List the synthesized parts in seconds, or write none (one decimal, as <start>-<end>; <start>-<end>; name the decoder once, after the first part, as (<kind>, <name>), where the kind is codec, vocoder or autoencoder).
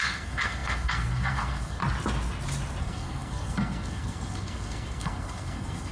0.0-1.8 (codec, SNAC); 2.8-5.9